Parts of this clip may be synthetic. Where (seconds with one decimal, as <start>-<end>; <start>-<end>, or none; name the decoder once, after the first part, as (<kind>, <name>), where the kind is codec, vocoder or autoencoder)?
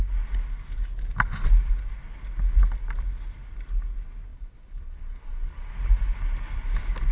4.3-5.7 (vocoder, Vocos)